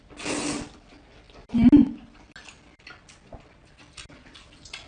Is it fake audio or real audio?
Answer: real